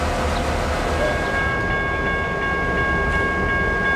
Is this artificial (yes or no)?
no